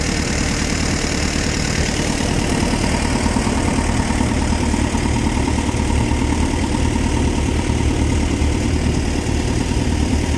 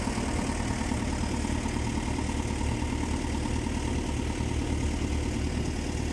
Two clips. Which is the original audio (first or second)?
second